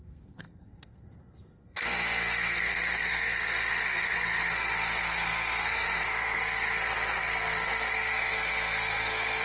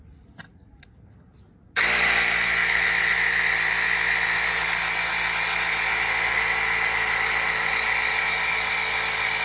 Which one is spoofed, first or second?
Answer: first